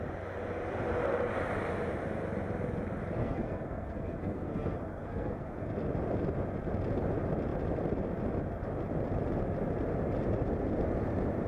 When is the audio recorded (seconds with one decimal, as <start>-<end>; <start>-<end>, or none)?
0.0-3.2; 5.7-11.5